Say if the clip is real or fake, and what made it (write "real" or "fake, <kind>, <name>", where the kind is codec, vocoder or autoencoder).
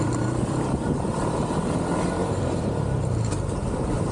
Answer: fake, vocoder, BigVGAN v2